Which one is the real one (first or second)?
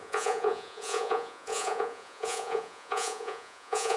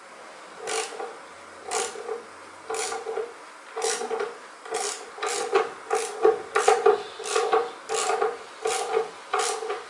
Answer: second